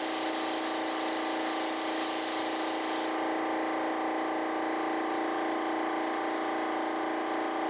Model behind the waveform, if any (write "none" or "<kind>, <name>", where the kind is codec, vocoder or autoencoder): none